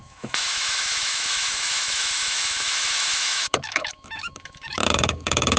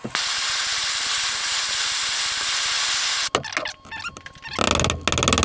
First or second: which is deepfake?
first